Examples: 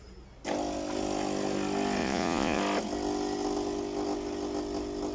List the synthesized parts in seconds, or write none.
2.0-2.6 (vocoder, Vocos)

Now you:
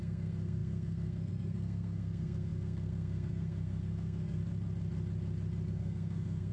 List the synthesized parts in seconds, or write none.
0.0-4.4 (codec, SNAC); 5.7-6.5

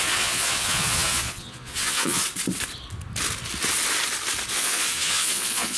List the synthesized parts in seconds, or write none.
0.0-2.2 (vocoder, Vocos); 4.5-5.8

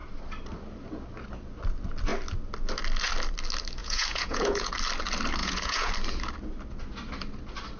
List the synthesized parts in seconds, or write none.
3.8-4.7 (vocoder, Vocos); 5.4-5.9

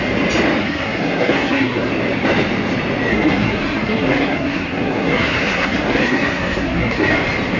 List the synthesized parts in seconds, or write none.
0.6-1.9 (codec, SNAC); 3.1-7.1

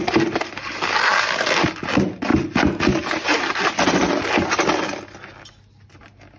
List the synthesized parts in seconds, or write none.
none